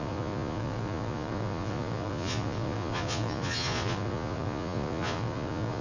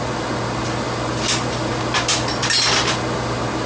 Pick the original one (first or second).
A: second